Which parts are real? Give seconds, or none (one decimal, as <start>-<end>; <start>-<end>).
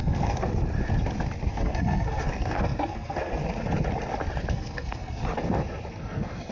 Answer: 0.6-1.5; 3.4-4.5; 5.2-5.9